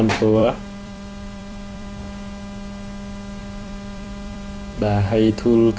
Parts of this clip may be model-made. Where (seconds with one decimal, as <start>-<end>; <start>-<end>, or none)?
0.4-2.0; 3.4-5.3